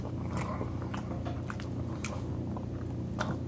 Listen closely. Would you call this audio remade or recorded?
recorded